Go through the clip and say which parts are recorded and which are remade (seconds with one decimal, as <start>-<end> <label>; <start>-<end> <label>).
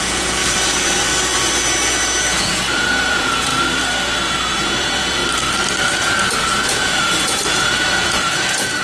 0.0-0.4 remade; 0.4-2.4 recorded; 2.4-3.5 remade; 3.5-4.5 recorded; 4.5-5.2 remade; 5.2-5.9 recorded; 5.9-8.8 remade